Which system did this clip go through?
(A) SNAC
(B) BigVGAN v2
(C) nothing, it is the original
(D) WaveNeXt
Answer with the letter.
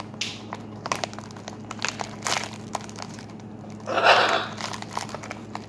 C